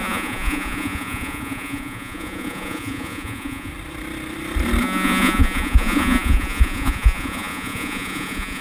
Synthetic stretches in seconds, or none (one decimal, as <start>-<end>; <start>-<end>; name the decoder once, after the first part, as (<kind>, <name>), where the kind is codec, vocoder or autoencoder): 0.0-3.7 (vocoder, Vocos); 4.8-8.6